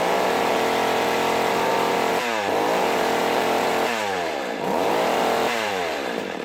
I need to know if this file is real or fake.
fake